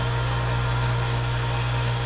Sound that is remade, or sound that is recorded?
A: recorded